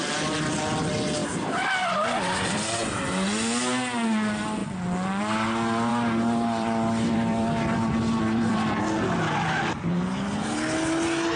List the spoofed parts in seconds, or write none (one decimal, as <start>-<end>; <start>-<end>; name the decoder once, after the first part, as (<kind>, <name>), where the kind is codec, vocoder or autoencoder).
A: 1.2-2.8 (vocoder, BigVGAN v2); 5.9-8.8